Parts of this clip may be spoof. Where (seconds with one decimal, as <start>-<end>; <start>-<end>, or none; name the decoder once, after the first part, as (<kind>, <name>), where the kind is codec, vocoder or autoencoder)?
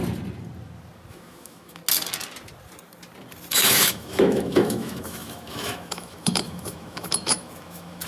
1.1-1.8 (autoencoder, DAC-VAE); 3.5-8.1